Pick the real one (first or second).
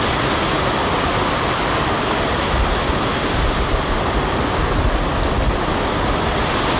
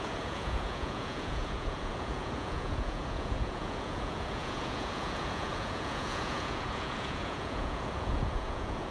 first